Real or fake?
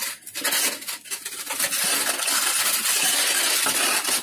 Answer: real